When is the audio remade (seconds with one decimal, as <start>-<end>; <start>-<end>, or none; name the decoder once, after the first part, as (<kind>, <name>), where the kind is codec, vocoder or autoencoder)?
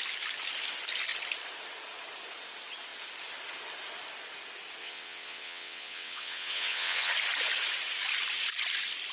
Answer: 4.8-7.1 (vocoder, WaveNeXt)